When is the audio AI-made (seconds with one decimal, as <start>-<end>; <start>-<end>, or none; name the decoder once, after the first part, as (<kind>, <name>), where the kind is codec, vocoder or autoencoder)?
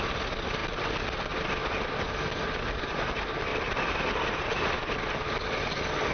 3.5-4.6 (vocoder, BigVGAN v2)